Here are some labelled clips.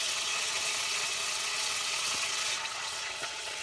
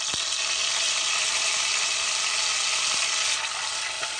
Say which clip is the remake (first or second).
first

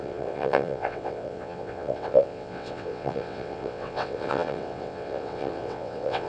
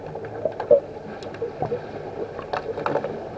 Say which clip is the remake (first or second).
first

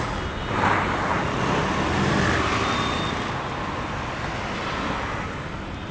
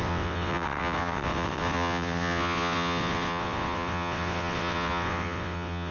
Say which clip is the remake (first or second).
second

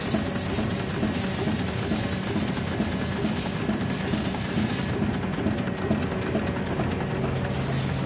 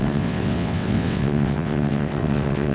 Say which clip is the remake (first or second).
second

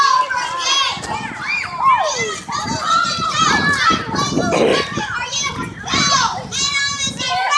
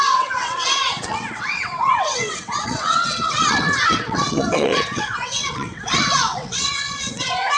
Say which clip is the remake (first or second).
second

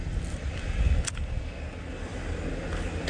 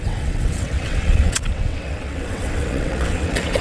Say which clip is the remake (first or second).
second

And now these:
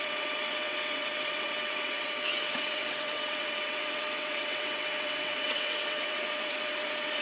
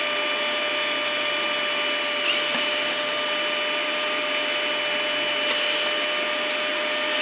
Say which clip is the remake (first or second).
first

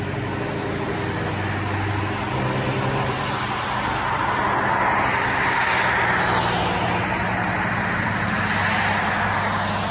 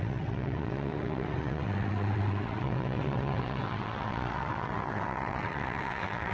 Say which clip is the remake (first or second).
second